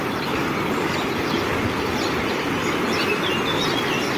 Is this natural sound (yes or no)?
yes